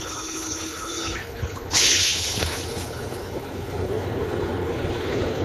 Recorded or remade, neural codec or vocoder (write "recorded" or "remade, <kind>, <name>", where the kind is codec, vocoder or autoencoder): remade, codec, HILCodec